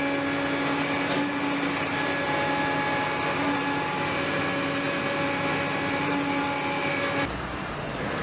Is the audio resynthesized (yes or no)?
no